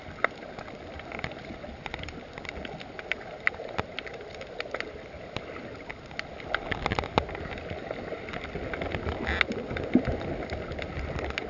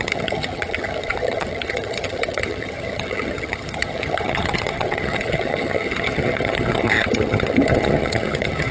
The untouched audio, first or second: first